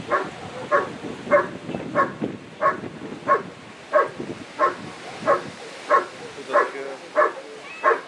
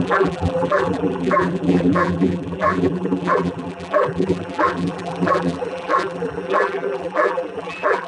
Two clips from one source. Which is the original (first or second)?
first